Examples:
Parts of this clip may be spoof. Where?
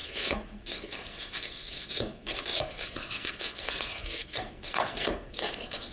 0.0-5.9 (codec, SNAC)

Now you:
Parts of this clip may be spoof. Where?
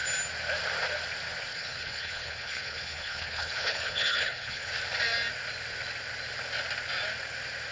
1.5-4.7 (codec, HILCodec)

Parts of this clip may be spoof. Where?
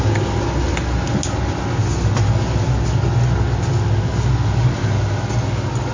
none